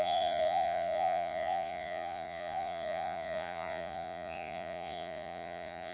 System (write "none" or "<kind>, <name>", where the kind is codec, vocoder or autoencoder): vocoder, Vocos